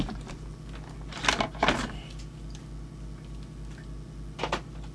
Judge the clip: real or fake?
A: real